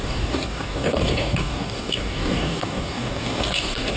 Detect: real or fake fake